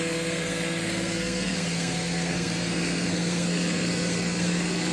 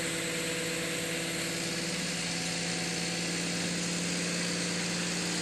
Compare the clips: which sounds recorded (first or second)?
second